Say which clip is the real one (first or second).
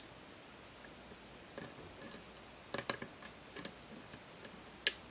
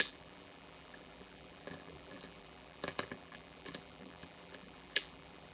first